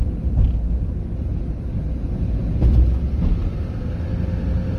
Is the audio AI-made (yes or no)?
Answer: no